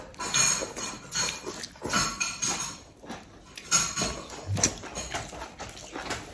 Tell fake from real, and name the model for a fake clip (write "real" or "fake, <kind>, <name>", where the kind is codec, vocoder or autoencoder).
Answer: real